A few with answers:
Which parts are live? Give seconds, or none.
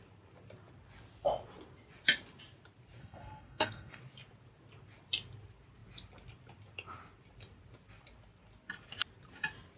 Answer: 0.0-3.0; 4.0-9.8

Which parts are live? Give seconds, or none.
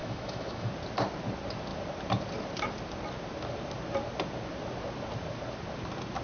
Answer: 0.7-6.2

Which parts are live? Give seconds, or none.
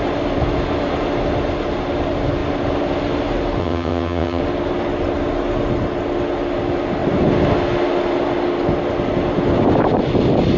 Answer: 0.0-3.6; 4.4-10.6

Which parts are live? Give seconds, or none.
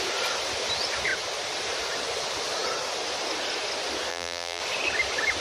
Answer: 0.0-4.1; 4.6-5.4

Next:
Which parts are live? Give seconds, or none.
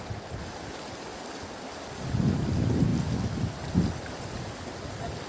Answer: 0.0-5.3